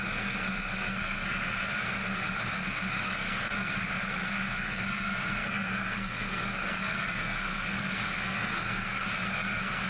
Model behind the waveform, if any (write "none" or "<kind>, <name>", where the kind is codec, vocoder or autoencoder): codec, SNAC